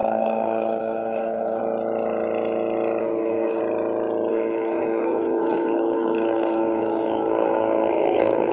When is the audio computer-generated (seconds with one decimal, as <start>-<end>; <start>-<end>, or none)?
0.0-1.6; 3.0-3.6; 4.3-8.5